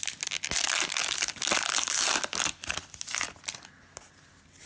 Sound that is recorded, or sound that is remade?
recorded